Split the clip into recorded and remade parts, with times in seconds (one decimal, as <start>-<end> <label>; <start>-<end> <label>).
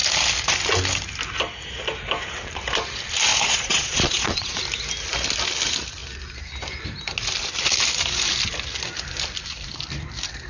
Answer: 0.0-3.3 recorded; 3.3-4.6 remade; 4.6-10.5 recorded